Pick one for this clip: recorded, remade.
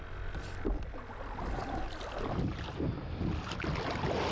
recorded